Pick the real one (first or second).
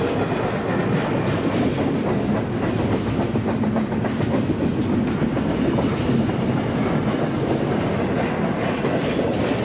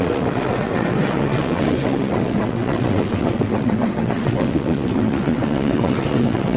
first